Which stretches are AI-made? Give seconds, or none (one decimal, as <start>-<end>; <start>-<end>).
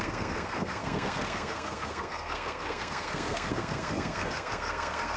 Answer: 0.0-5.2